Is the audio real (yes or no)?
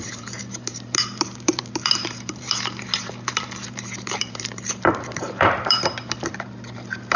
no